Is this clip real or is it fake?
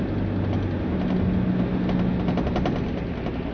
real